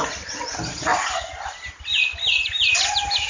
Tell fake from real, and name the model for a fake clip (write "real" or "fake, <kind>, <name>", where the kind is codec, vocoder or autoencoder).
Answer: real